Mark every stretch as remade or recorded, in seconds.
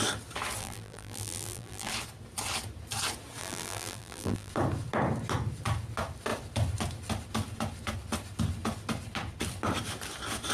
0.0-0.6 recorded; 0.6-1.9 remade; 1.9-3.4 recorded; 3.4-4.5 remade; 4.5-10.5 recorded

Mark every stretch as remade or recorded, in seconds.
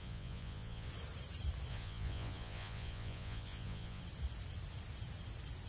0.0-0.9 remade; 0.9-1.7 recorded; 1.7-4.0 remade; 4.0-5.7 recorded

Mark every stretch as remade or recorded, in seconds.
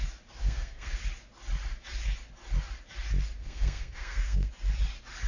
0.0-0.4 recorded; 0.4-1.0 remade; 1.0-3.4 recorded; 3.4-4.5 remade; 4.5-5.3 recorded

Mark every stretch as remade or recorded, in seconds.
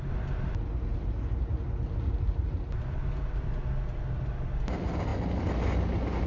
0.0-6.3 recorded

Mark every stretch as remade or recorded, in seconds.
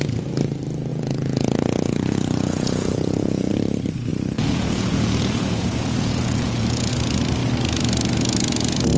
0.0-0.9 recorded; 0.9-3.5 remade; 3.5-4.1 recorded; 4.1-6.9 remade; 6.9-9.0 recorded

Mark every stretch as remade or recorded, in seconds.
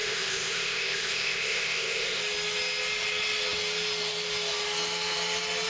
0.0-2.2 remade; 2.2-5.7 recorded